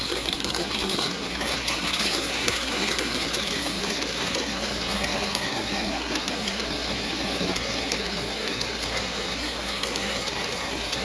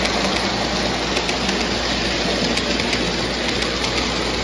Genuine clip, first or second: second